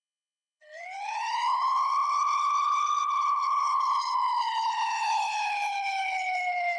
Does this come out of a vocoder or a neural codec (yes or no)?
yes